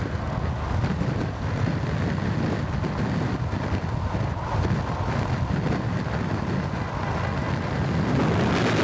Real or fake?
real